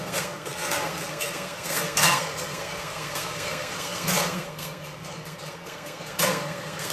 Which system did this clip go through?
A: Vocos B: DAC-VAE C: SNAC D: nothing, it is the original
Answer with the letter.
C